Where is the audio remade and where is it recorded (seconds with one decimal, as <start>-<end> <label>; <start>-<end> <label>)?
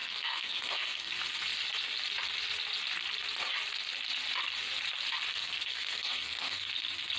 0.0-1.1 remade; 1.1-5.3 recorded; 5.3-6.7 remade; 6.7-7.2 recorded